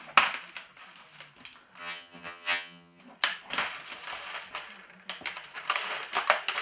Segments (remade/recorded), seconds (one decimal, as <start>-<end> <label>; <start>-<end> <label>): 0.0-1.8 recorded; 1.8-3.0 remade; 3.0-6.6 recorded